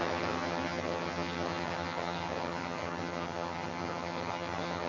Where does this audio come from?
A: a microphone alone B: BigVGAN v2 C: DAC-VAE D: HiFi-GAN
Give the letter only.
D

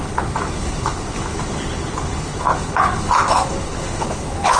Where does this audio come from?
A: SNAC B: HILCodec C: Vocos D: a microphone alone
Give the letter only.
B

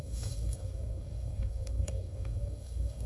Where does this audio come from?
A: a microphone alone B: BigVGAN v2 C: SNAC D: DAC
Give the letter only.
D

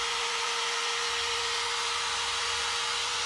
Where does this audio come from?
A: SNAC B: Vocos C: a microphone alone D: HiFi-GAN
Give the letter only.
B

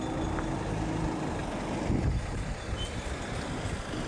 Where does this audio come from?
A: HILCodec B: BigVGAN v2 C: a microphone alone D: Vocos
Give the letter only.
C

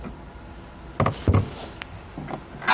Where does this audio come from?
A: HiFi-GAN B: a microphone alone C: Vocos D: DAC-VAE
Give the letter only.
B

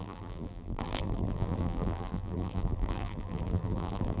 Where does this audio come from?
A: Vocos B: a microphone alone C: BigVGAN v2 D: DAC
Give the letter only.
C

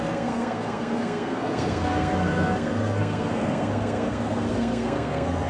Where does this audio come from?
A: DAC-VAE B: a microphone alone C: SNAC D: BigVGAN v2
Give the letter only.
C